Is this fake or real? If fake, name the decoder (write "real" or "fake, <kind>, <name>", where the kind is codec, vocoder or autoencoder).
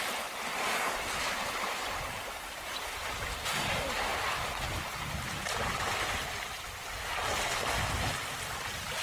real